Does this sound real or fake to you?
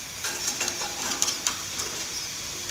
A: real